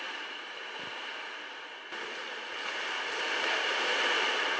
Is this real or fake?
real